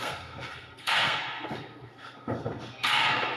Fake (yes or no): yes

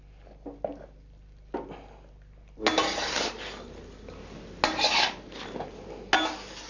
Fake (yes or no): no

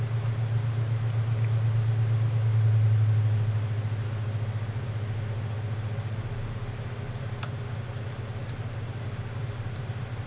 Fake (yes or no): no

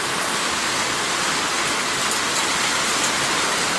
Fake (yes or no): no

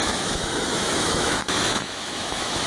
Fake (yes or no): yes